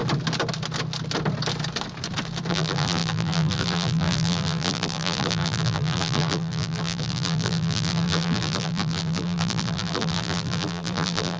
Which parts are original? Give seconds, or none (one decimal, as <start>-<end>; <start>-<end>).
0.0-2.5